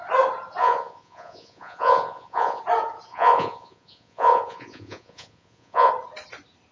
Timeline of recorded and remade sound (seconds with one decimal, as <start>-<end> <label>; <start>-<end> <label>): 0.0-0.6 recorded; 0.6-2.6 remade; 2.6-3.1 recorded; 3.1-5.9 remade; 5.9-6.7 recorded